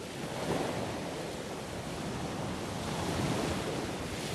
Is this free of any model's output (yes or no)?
yes